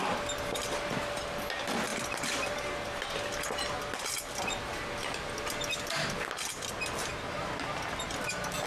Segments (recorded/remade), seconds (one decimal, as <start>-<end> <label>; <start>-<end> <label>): 0.0-8.7 recorded